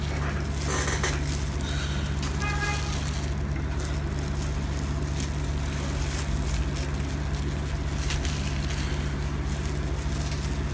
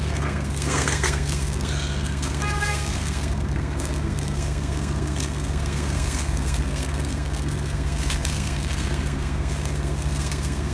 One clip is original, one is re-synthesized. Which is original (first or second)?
first